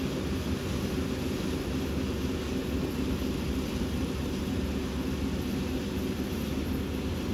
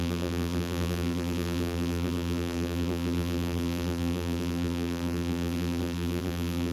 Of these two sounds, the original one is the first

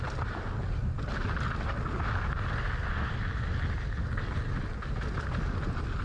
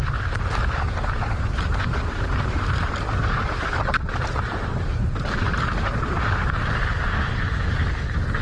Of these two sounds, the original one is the first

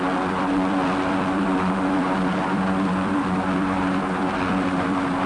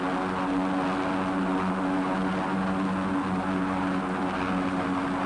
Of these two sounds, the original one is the second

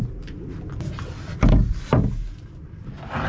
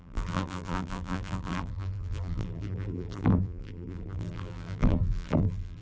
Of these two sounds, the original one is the first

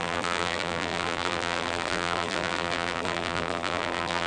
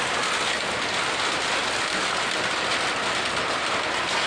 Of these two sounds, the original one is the second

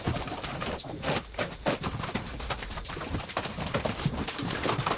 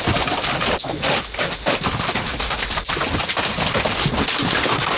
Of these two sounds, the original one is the second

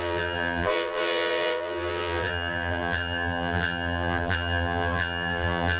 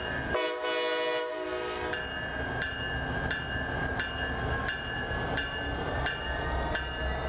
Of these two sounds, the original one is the second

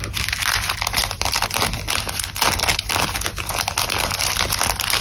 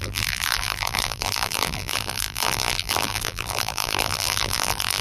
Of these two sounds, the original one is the first